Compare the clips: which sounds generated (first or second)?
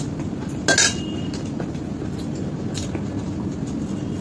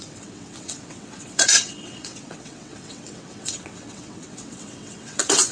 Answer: second